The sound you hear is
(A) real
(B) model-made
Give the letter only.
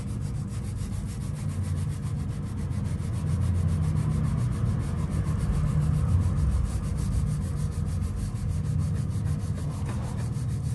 A